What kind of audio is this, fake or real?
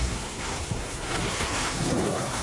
fake